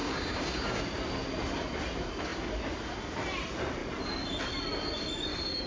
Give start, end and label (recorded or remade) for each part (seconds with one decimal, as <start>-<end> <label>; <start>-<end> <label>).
0.0-0.8 remade; 0.8-5.7 recorded